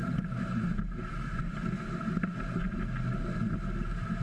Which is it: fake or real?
real